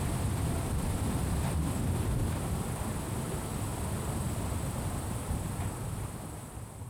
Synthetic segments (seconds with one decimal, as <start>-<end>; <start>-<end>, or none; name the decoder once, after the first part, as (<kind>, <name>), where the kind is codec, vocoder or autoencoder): none